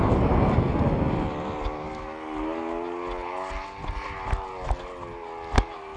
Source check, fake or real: real